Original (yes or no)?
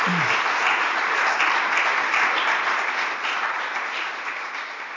yes